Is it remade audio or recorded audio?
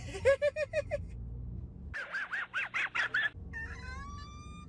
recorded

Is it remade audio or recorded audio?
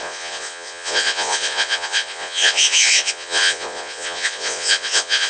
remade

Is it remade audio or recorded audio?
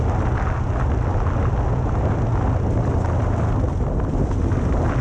recorded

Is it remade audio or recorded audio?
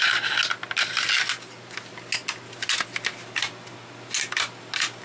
recorded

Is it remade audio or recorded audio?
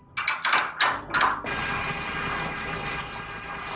recorded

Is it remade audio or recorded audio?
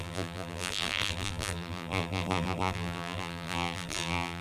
remade